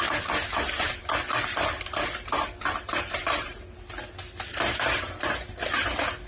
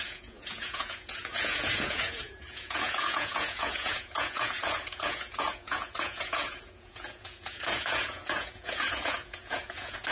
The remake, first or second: second